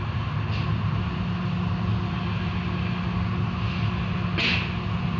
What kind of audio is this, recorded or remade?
recorded